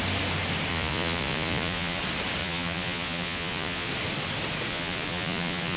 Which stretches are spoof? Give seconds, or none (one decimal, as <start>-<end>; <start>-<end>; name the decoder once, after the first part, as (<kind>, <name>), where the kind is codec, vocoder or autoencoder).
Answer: 0.7-2.0 (vocoder, Vocos); 2.4-3.9; 4.7-5.8